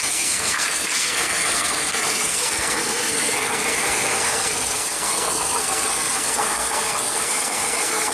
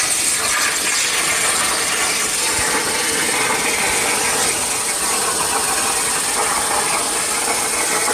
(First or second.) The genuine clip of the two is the second